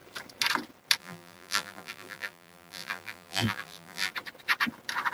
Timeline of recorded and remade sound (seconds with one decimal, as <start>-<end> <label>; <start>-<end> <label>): 0.0-1.0 recorded; 1.0-4.1 remade; 4.1-5.1 recorded